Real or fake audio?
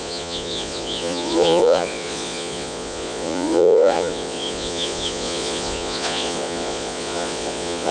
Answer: fake